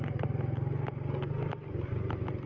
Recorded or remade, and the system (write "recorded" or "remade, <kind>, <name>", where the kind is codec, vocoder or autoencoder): recorded